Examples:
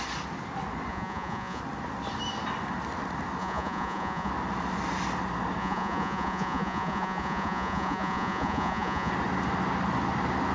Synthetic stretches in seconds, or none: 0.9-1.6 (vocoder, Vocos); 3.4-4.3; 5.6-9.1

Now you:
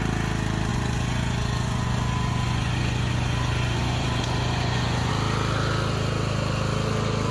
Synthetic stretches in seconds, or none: 0.7-5.1 (vocoder, Vocos)

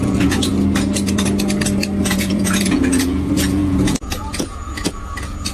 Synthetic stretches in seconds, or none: 0.0-0.5 (vocoder, Vocos); 2.0-5.5

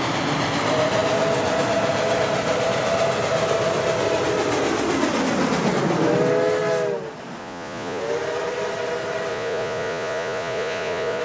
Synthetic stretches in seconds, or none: 7.4-8.0 (vocoder, Vocos); 9.3-11.2